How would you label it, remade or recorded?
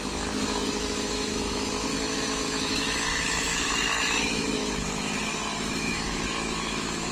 remade